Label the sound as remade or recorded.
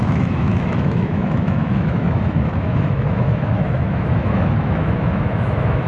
remade